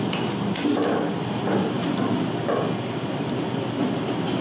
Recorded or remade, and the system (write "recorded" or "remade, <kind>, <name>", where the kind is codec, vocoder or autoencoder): recorded